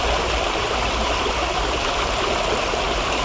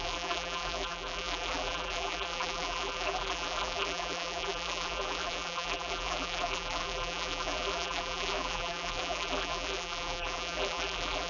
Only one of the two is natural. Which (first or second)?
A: first